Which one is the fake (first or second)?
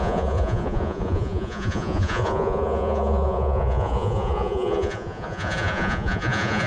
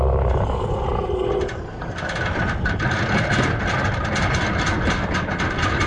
first